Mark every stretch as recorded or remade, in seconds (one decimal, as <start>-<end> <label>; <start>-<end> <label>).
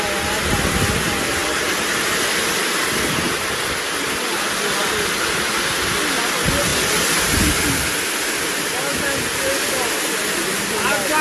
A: 0.0-11.2 recorded